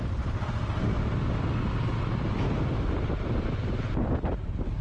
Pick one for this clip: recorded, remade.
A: recorded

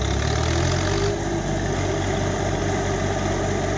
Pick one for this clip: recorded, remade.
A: recorded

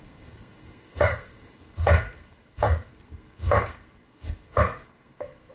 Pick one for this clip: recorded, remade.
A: remade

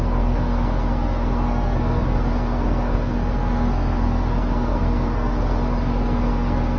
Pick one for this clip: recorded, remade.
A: remade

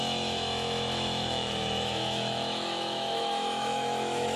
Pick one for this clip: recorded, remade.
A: remade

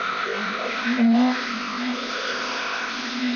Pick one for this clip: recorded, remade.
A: remade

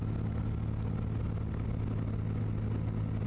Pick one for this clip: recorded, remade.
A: recorded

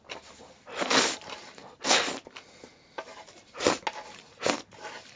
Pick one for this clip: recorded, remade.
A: recorded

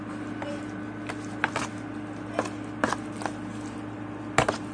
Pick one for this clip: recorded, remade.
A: recorded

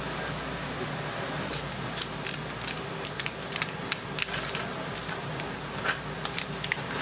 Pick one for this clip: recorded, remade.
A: recorded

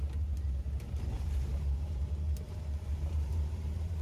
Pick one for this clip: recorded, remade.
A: remade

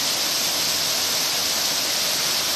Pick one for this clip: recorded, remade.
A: recorded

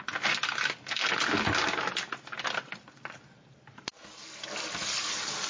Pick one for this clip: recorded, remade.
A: recorded